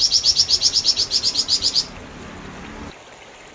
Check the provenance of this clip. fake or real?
real